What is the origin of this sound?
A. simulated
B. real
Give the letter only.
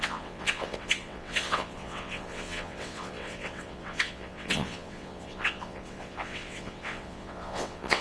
A